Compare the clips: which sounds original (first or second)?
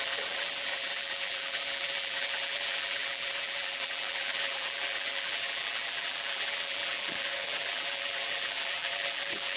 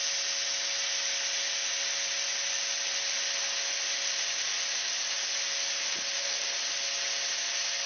second